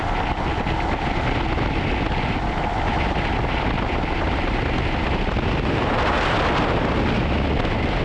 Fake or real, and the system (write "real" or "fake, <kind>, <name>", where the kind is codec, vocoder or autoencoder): real